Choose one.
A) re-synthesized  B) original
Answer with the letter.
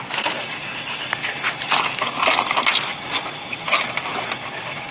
B